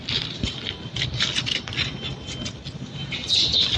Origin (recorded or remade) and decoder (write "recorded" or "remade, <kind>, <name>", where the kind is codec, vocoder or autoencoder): recorded